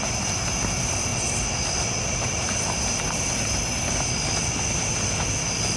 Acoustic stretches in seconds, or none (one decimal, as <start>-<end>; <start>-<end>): 0.0-5.8